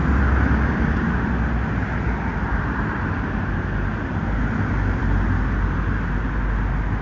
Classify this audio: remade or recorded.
recorded